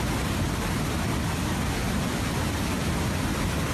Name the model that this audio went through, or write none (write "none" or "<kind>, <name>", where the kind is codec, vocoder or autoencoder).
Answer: none